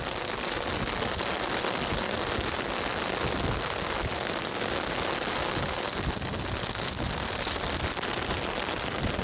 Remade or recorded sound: recorded